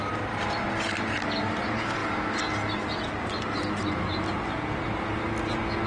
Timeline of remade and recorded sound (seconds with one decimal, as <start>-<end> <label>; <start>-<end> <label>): 0.0-5.9 recorded